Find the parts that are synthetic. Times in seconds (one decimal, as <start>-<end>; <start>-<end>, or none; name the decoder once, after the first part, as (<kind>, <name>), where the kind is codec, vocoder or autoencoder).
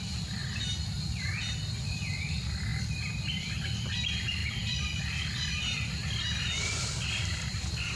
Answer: 0.0-0.4 (vocoder, BigVGAN v2); 1.4-6.0; 6.7-8.0